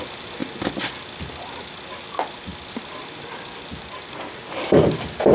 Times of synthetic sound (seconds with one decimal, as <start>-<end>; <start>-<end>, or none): none